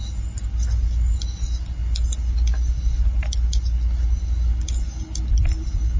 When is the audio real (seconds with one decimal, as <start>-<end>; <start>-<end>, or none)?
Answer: 0.0-6.0